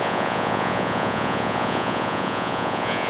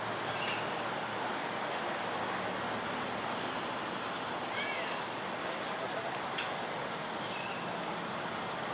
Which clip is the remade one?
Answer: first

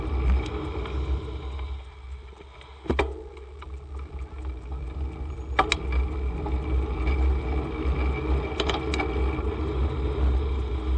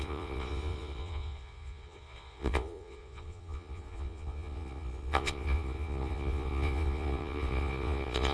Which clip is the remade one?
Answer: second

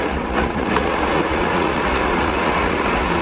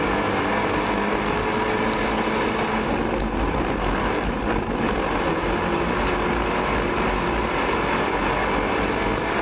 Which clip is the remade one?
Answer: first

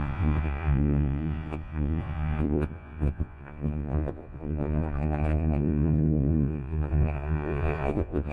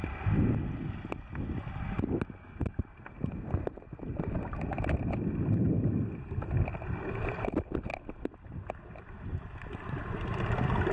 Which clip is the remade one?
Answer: first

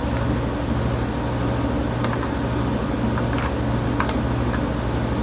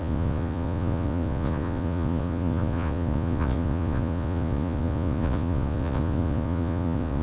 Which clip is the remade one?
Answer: second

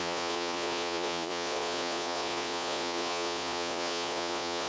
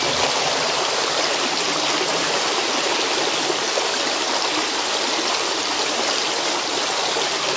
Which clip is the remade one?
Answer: first